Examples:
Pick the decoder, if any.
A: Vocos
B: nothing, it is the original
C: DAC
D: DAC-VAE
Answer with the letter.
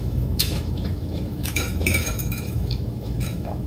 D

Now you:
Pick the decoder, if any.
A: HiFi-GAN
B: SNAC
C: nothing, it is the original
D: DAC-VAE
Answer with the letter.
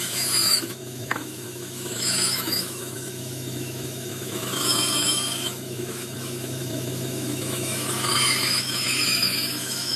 D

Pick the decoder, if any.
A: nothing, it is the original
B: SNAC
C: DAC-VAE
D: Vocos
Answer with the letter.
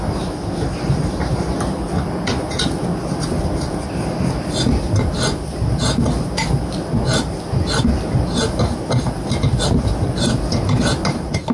A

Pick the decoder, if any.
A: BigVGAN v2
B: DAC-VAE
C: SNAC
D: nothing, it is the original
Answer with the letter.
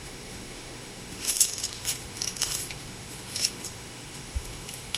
B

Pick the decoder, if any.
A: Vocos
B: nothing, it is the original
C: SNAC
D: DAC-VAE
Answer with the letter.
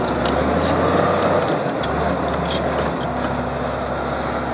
B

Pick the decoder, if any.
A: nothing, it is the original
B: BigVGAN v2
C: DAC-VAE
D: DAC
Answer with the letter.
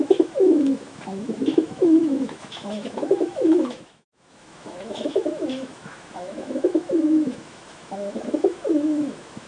C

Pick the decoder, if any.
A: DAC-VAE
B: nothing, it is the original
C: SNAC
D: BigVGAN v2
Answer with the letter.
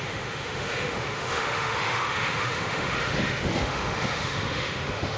A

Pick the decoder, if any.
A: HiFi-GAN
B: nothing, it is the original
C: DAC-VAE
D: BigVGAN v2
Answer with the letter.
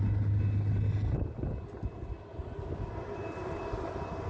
B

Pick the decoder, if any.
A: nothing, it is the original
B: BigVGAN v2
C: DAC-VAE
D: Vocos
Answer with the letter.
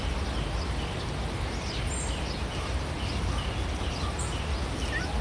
A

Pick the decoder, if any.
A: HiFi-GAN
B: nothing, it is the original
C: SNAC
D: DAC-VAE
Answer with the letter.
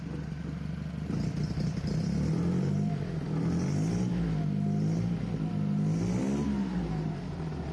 B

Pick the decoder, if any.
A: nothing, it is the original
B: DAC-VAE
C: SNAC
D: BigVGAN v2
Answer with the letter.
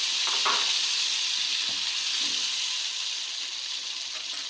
A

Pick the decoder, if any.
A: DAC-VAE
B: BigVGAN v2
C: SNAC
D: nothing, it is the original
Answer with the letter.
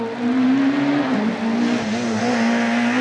D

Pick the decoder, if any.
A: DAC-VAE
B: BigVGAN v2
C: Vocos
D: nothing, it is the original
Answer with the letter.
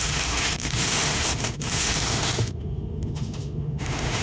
A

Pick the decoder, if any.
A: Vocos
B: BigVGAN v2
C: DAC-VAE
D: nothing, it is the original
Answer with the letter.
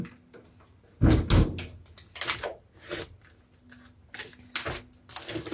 D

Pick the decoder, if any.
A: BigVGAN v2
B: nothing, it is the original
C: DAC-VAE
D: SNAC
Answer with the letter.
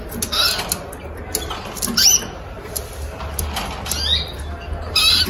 B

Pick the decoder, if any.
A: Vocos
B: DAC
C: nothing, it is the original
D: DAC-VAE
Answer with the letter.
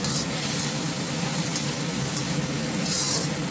C